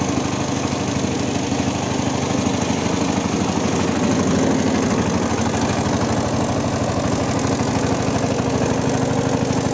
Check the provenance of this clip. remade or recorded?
recorded